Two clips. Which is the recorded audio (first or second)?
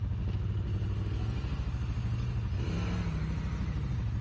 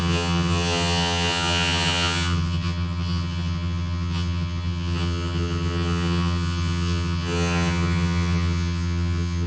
first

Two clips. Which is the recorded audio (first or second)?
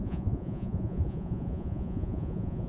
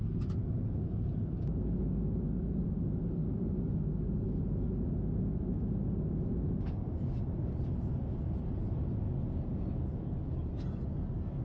second